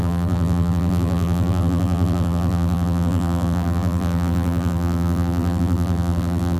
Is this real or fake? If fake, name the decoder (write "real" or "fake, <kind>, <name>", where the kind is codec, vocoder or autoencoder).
fake, vocoder, BigVGAN v2